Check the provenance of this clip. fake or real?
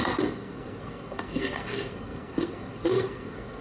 fake